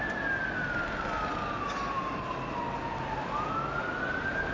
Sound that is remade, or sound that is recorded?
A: recorded